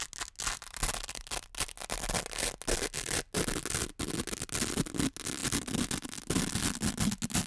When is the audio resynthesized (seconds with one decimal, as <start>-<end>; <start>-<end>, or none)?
none